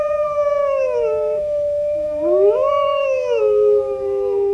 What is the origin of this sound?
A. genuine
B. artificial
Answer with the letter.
B